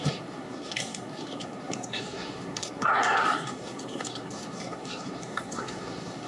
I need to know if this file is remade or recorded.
remade